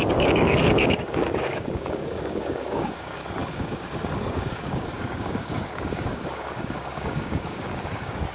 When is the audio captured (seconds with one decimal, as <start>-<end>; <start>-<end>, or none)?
none